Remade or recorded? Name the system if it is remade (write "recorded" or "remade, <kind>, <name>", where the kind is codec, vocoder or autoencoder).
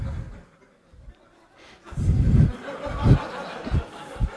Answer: recorded